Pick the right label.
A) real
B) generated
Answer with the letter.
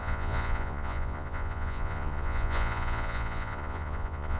B